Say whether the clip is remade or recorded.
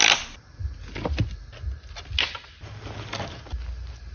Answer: recorded